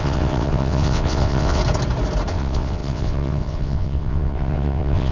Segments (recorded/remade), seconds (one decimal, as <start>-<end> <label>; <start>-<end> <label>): 0.0-1.6 remade; 1.6-2.3 recorded; 2.3-5.1 remade